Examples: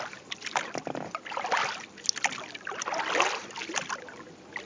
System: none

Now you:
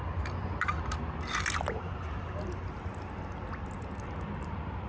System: none